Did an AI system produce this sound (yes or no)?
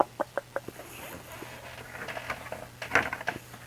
no